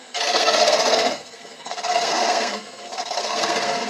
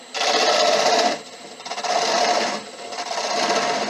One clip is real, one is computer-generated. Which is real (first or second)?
second